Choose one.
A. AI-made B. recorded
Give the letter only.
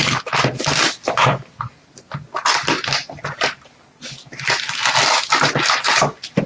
B